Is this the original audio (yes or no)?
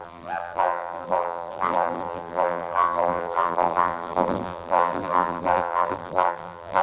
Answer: no